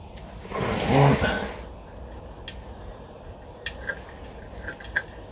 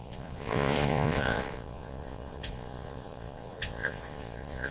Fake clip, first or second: second